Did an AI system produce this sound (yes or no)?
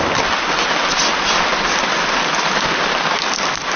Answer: no